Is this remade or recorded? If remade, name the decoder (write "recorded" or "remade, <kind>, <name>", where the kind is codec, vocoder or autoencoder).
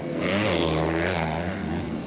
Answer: remade, codec, SNAC